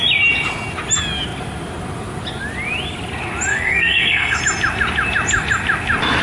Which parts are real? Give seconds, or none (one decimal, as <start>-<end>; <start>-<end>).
0.0-3.5; 4.4-6.2

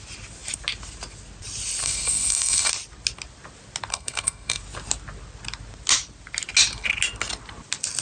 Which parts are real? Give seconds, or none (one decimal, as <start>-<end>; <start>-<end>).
0.0-1.8; 2.7-3.9; 4.6-8.0

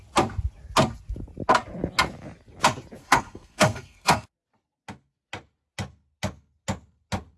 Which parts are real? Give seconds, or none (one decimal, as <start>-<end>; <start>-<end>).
0.0-3.0; 4.3-7.4

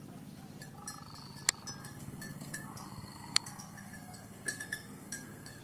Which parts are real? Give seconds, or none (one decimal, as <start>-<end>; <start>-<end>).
0.0-1.8